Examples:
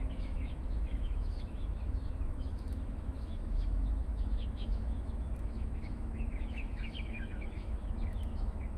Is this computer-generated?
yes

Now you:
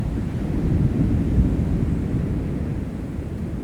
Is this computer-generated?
yes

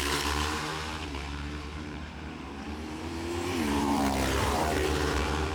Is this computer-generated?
yes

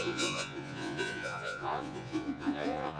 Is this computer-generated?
yes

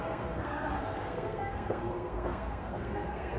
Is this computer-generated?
yes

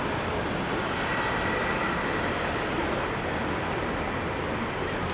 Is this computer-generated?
no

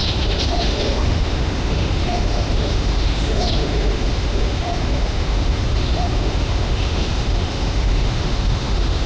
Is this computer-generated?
yes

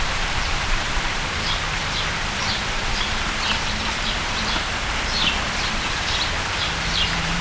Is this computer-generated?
yes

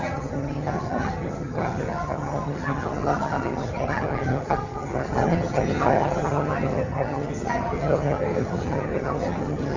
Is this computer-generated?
yes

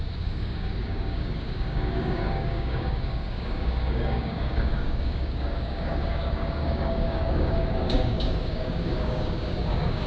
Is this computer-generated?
yes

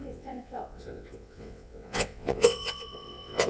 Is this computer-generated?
yes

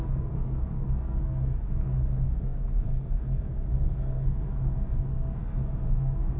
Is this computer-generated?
yes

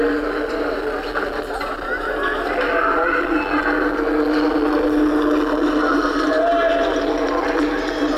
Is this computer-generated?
no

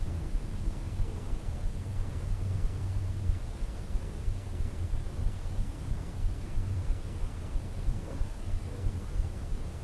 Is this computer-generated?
yes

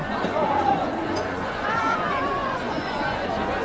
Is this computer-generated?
yes